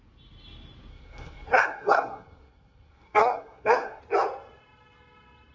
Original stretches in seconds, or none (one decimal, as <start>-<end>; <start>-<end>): 0.0-0.9; 4.0-5.5